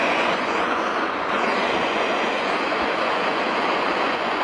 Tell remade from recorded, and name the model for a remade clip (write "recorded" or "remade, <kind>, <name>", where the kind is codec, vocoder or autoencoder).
remade, vocoder, Vocos